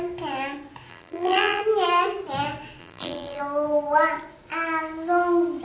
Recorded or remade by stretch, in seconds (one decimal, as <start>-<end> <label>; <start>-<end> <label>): 0.0-0.9 recorded; 0.9-1.6 remade; 1.6-2.8 recorded; 2.8-3.4 remade; 3.4-5.6 recorded